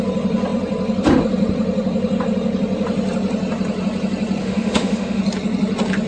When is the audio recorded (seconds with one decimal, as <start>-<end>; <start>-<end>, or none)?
0.0-4.4; 5.2-6.1